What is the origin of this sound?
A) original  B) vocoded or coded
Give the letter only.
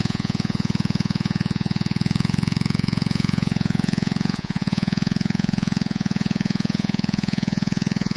B